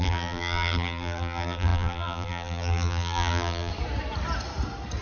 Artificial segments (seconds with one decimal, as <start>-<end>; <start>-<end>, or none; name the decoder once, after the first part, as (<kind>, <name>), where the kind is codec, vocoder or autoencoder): 0.0-3.7 (vocoder, BigVGAN v2)